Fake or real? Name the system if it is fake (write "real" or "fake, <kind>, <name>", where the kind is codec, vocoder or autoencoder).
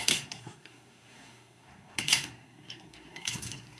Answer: fake, codec, SNAC